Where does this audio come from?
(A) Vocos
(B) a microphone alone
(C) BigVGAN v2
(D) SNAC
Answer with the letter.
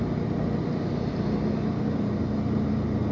B